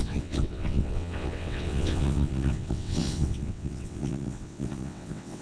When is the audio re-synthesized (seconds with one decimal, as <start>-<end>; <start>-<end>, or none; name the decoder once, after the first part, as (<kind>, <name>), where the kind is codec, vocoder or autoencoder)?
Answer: 0.0-5.4 (vocoder, WaveNeXt)